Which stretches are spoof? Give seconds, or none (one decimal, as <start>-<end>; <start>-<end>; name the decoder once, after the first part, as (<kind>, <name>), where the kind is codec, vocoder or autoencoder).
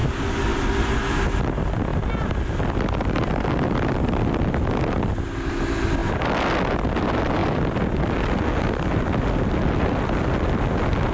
none